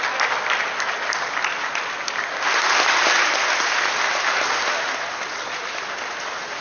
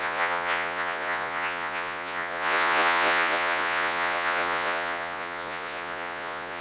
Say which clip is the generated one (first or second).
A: second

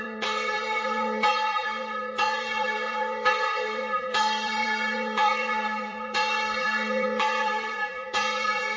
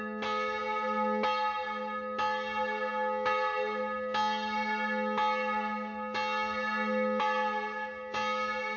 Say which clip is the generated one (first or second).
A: first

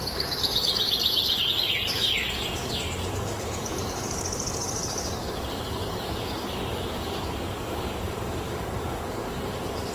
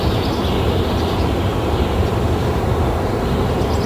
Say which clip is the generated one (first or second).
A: first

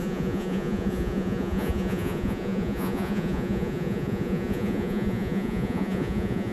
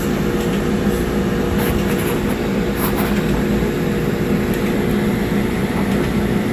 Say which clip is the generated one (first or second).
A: first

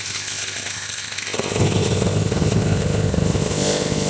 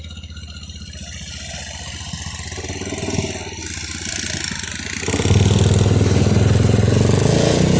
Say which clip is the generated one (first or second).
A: first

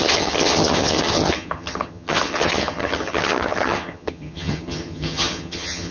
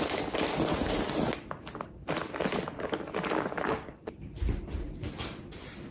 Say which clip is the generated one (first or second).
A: first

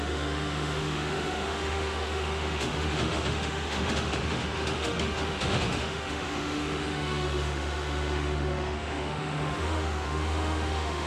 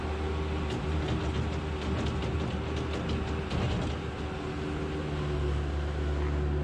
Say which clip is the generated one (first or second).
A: first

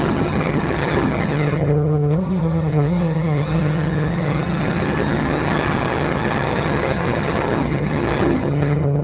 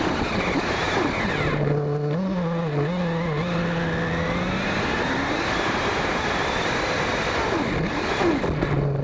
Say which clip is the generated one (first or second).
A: first